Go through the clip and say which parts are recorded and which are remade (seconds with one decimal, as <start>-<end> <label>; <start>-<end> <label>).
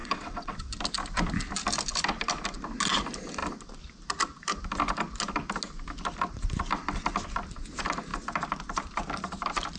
0.0-0.7 remade; 0.7-9.8 recorded